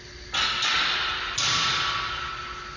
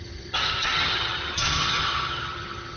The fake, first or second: second